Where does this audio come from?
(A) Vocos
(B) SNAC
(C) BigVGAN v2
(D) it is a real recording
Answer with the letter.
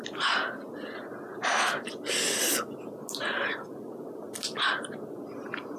D